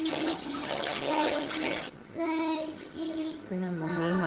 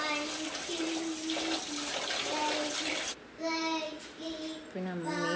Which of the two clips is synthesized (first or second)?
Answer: first